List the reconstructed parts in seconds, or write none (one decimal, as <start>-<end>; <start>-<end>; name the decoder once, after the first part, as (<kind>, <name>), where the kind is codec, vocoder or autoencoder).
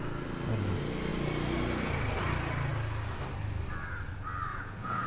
4.5-5.1 (vocoder, Vocos)